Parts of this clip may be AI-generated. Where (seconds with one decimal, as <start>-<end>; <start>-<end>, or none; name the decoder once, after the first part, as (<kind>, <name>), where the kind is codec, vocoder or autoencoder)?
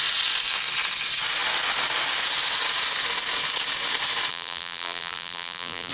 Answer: 4.3-5.9 (vocoder, BigVGAN v2)